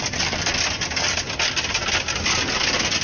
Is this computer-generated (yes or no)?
no